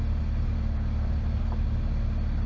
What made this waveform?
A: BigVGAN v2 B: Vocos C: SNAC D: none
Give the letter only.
D